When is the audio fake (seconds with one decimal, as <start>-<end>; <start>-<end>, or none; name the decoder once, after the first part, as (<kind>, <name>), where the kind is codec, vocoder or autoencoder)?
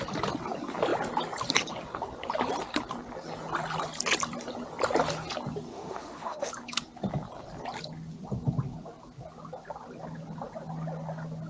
5.7-6.5 (autoencoder, DAC-VAE)